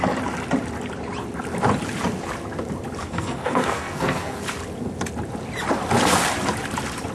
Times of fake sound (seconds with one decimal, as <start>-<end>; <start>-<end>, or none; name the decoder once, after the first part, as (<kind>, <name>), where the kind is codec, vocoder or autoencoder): 3.0-4.4 (codec, SNAC)